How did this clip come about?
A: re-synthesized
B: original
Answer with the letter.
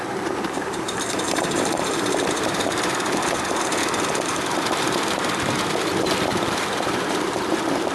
A